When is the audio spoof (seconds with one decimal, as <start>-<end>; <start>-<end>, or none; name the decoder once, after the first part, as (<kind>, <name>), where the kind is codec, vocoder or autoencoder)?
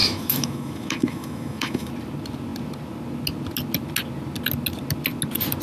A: 0.0-1.9 (autoencoder, DAC-VAE)